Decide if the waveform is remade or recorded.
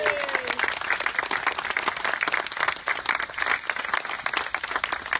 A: recorded